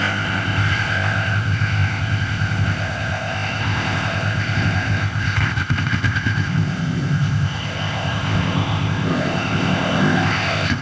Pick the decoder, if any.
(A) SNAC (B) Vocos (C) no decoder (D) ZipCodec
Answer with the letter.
D